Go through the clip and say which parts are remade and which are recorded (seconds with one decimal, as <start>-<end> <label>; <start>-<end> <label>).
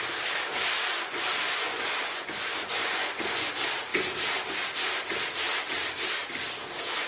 0.0-0.9 recorded; 0.9-3.5 remade; 3.5-7.1 recorded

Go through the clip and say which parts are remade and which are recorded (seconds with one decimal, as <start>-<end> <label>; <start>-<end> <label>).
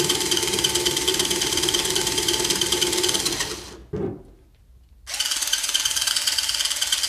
0.0-1.1 recorded; 1.1-2.8 remade; 2.8-7.1 recorded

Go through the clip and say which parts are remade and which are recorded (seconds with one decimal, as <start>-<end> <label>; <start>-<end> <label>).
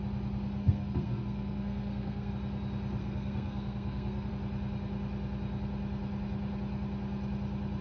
0.0-0.6 recorded; 0.6-2.3 remade; 2.3-3.0 recorded; 3.0-4.3 remade; 4.3-7.8 recorded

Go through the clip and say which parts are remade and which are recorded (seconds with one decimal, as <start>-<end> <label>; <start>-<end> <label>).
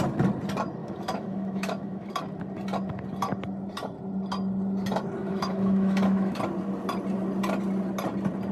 0.0-0.8 recorded; 0.8-2.1 remade; 2.1-5.2 recorded; 5.2-6.4 remade; 6.4-8.5 recorded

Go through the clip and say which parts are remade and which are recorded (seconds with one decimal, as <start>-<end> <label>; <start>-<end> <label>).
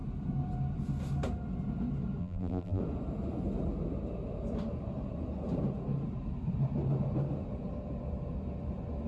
0.0-2.2 recorded; 2.2-2.8 remade; 2.8-9.1 recorded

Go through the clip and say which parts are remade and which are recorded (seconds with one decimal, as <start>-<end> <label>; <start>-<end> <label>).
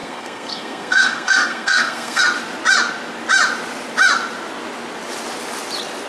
0.0-2.2 remade; 2.2-6.1 recorded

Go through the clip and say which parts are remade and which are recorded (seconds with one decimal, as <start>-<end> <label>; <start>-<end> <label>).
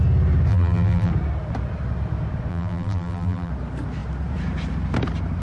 0.0-0.5 recorded; 0.5-1.1 remade; 1.1-2.5 recorded; 2.5-3.5 remade; 3.5-5.4 recorded